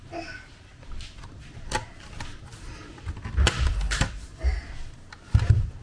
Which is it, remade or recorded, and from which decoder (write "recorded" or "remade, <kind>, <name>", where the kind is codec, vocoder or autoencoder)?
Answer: recorded